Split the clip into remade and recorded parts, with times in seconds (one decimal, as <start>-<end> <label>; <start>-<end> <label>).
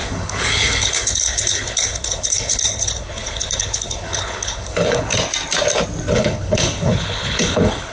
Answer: 0.0-5.1 remade; 5.1-6.1 recorded; 6.1-7.9 remade